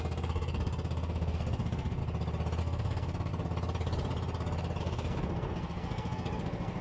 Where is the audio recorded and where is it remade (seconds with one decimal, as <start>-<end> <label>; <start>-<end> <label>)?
0.0-2.0 remade; 2.0-2.6 recorded; 2.6-3.3 remade; 3.3-4.8 recorded; 4.8-6.8 remade